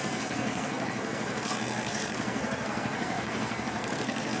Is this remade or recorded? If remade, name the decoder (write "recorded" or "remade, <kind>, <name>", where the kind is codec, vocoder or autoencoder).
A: remade, codec, SNAC